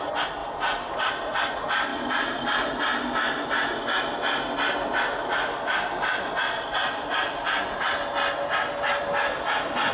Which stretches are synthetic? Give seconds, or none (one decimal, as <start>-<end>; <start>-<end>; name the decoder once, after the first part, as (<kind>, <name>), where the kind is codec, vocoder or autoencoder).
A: none